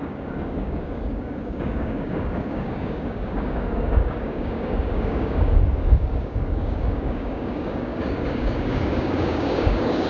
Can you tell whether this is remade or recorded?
remade